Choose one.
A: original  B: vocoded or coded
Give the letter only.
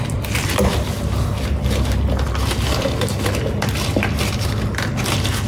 A